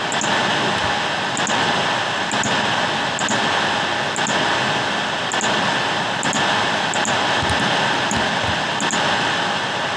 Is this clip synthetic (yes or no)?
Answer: no